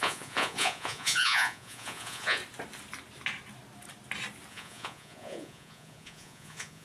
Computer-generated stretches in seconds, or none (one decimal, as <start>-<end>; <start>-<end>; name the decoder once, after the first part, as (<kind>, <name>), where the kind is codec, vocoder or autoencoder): 0.0-2.4 (vocoder, Vocos); 4.5-6.8